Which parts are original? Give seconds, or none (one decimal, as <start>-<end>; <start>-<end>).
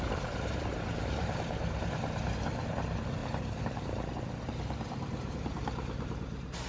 none